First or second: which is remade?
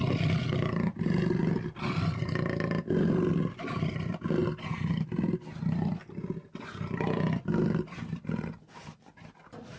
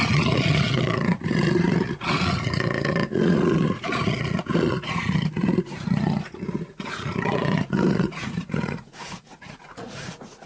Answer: second